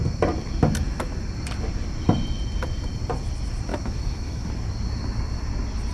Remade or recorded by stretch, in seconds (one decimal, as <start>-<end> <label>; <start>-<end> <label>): 0.0-3.7 recorded; 3.7-4.5 remade; 4.5-5.9 recorded